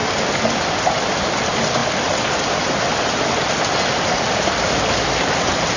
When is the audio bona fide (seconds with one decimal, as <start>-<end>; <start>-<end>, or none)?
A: 1.8-3.3